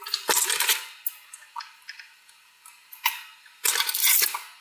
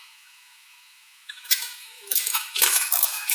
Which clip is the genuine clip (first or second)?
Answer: first